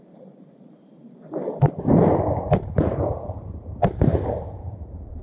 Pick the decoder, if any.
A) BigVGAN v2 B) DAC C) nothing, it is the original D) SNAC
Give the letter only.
A